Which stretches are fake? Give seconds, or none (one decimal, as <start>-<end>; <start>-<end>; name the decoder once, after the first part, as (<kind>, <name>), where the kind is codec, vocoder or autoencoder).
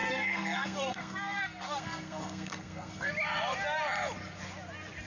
0.0-3.1 (codec, SNAC)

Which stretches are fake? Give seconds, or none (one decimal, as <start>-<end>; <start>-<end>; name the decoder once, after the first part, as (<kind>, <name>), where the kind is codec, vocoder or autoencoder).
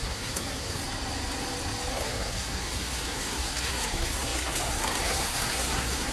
0.0-0.8 (codec, SNAC); 1.9-6.1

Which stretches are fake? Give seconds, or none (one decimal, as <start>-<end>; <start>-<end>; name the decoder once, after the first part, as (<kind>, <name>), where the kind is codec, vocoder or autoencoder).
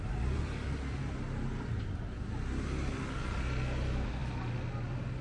none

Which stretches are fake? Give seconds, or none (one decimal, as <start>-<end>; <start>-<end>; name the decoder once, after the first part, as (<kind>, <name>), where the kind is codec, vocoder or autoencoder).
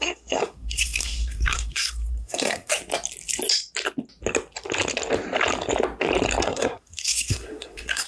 0.0-2.7 (codec, SNAC); 6.4-8.1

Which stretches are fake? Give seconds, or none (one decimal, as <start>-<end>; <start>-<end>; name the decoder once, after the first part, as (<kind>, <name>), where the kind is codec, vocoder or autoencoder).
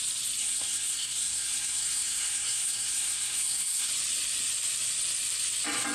0.4-3.9 (codec, SNAC)